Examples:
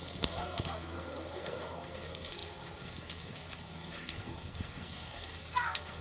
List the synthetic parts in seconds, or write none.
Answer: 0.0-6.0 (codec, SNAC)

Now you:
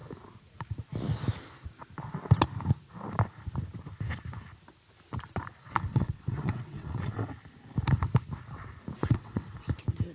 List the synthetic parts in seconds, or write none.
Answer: 5.9-7.3 (vocoder, WaveNeXt); 9.0-9.6

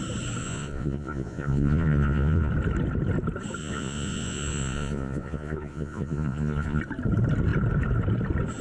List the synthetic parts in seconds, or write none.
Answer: 0.4-2.5 (vocoder, Vocos); 3.6-6.8